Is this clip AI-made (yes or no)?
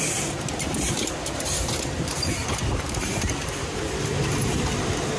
yes